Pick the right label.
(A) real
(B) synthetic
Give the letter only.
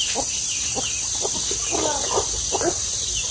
A